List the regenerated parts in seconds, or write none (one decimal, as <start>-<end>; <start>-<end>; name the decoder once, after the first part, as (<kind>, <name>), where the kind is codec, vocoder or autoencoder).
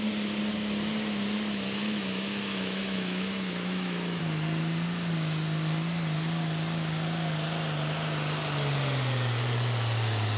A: 1.8-4.2 (autoencoder, DAC-VAE)